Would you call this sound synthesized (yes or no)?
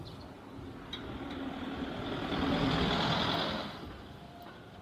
no